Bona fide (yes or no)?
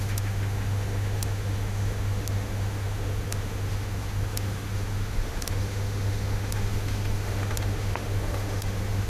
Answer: no